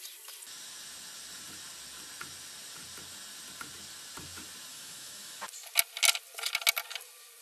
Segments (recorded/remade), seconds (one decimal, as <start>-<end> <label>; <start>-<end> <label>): 0.0-4.7 recorded; 4.7-5.4 remade; 5.4-7.4 recorded